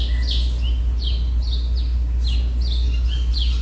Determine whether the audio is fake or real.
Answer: real